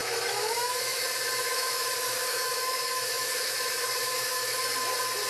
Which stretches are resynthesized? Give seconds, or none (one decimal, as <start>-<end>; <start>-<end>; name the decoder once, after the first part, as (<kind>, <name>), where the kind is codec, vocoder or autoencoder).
0.0-1.0 (autoencoder, DAC-VAE); 1.4-4.6